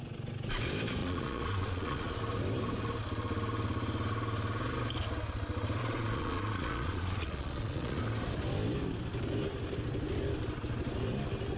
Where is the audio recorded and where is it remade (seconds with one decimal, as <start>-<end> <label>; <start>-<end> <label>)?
0.0-1.0 recorded; 1.0-2.2 remade; 2.2-5.8 recorded; 5.8-8.0 remade; 8.0-11.6 recorded